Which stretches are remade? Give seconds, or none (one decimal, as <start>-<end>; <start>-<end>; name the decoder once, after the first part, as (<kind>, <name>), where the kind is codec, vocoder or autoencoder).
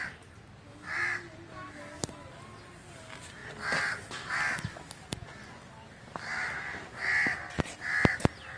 none